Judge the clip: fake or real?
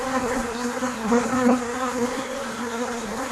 fake